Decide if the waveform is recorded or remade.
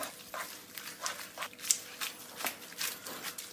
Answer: recorded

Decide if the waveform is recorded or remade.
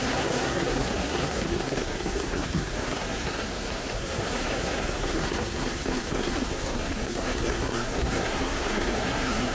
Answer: remade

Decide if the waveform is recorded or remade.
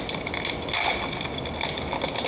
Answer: recorded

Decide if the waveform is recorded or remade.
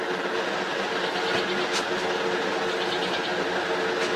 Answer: recorded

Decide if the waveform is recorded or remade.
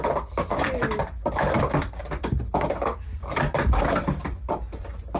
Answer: recorded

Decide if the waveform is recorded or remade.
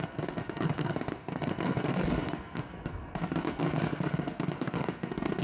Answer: remade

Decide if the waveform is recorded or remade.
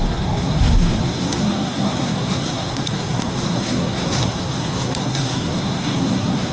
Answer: remade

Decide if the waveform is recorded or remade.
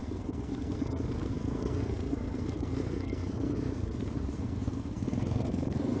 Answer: remade